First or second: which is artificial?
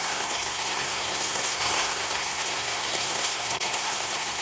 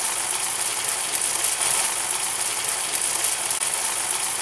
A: first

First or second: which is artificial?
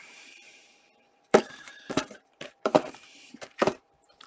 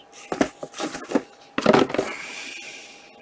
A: first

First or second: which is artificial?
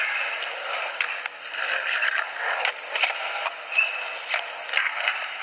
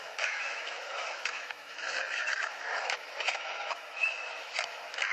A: second